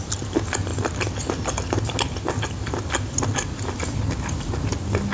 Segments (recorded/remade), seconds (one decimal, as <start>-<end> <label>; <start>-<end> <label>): 0.0-5.1 recorded